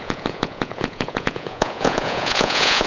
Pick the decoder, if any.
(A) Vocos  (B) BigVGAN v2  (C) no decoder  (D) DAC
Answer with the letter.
A